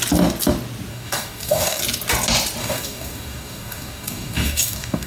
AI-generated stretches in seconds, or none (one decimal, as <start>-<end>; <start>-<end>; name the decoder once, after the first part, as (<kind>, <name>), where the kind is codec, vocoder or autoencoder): 0.9-1.8 (codec, DAC); 2.6-5.1